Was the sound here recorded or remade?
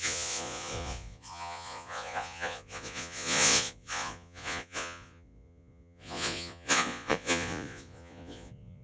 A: remade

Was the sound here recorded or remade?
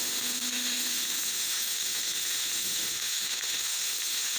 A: remade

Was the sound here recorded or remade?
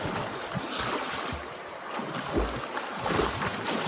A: recorded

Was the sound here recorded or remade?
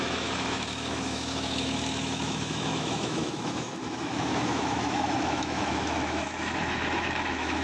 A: remade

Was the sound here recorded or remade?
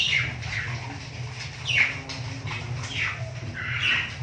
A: recorded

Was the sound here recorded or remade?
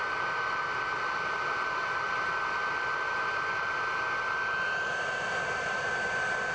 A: recorded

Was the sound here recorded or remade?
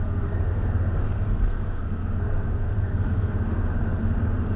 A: remade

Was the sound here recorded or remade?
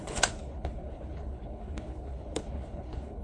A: remade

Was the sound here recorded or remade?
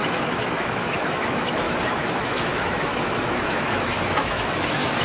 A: remade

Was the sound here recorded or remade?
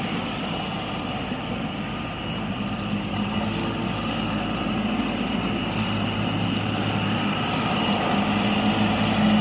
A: recorded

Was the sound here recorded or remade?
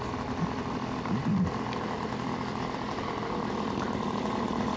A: recorded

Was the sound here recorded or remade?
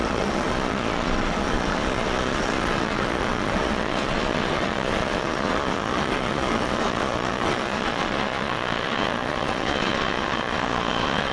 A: remade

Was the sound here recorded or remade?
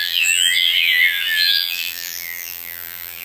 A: remade